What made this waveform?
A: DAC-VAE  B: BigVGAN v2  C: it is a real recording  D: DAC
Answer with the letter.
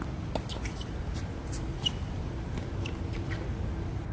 C